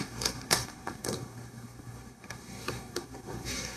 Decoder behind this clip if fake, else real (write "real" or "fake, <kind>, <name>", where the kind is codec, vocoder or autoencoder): fake, codec, SNAC